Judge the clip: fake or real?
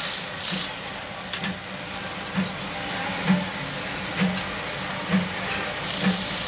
real